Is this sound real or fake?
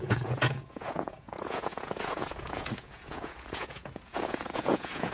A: fake